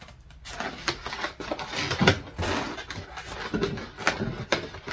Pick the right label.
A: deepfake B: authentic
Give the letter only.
B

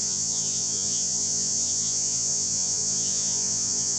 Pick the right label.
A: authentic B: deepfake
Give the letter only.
B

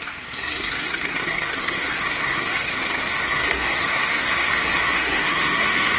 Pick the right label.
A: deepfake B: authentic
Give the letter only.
A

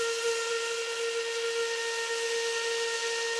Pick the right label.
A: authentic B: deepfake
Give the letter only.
A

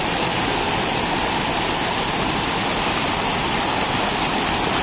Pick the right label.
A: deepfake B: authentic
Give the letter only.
B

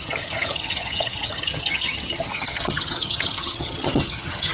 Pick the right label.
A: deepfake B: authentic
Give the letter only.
A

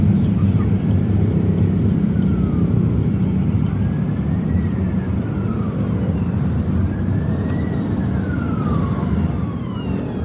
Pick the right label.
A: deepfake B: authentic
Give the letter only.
A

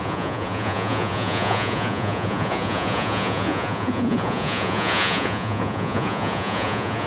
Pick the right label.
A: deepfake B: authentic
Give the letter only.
A